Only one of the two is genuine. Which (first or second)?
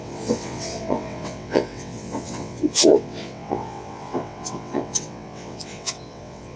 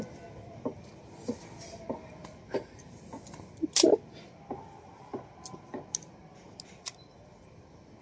second